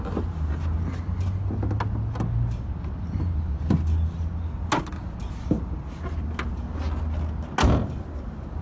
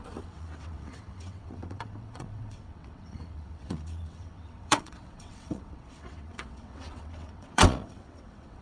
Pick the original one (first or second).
first